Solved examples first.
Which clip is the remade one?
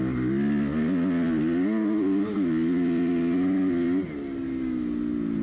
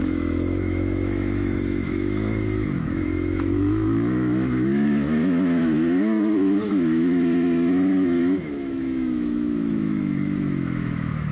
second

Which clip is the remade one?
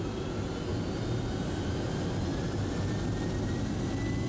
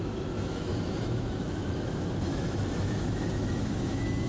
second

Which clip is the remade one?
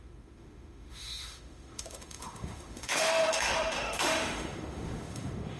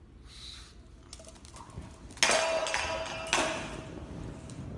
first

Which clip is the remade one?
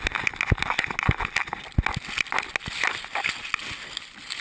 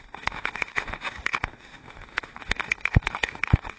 second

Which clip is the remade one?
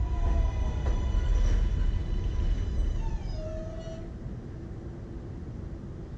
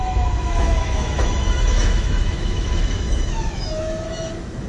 second